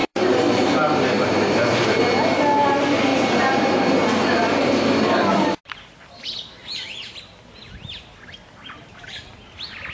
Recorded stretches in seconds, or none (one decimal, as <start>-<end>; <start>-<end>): 2.0-9.9